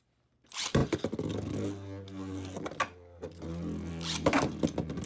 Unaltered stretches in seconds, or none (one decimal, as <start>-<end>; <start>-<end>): 0.0-5.1